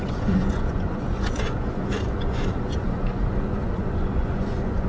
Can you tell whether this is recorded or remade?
remade